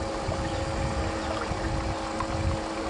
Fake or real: real